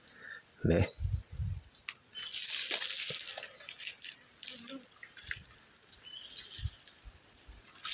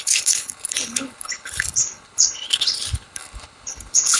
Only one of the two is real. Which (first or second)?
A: first